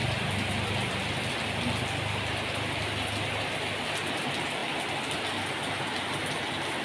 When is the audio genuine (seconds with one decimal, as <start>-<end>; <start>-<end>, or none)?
0.0-6.8